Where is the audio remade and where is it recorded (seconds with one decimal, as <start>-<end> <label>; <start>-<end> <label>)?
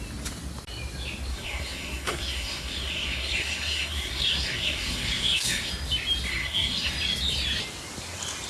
0.0-1.3 recorded; 1.3-5.7 remade; 5.7-6.3 recorded; 6.3-6.9 remade; 6.9-8.5 recorded